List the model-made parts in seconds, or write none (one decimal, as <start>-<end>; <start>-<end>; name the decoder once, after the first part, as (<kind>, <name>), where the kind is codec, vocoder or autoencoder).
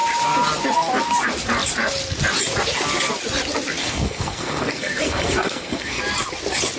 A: 3.8-6.0 (codec, SNAC)